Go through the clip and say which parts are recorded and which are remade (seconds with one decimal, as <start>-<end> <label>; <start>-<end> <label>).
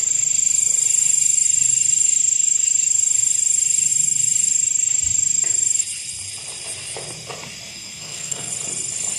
0.0-7.7 recorded; 7.7-8.5 remade; 8.5-9.2 recorded